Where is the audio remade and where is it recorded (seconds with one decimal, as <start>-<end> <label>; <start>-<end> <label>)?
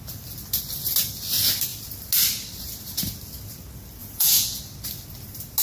0.0-4.0 recorded; 4.0-4.6 remade; 4.6-5.6 recorded